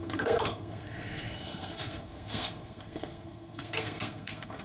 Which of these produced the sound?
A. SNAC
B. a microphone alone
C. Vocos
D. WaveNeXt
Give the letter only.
A